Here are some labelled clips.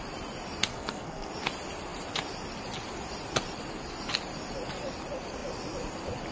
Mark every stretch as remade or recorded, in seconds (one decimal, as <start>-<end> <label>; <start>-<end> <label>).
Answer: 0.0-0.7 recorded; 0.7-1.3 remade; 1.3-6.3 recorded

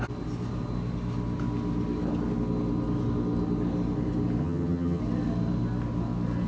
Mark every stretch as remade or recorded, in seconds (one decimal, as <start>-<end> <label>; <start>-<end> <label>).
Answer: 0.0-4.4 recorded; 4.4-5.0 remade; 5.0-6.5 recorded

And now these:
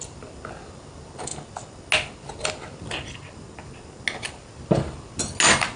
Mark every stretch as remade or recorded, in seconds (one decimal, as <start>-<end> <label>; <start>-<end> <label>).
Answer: 0.0-5.8 recorded

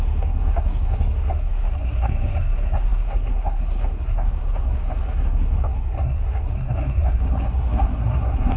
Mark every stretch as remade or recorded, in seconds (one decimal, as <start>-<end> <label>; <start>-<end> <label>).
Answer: 0.0-8.6 remade

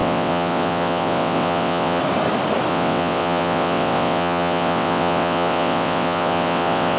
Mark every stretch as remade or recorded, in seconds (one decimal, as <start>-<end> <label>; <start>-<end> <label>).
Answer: 0.0-2.0 remade; 2.0-2.7 recorded; 2.7-7.0 remade

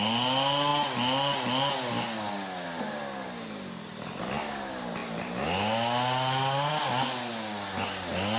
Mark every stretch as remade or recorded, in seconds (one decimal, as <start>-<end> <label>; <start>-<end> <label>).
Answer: 0.0-8.4 recorded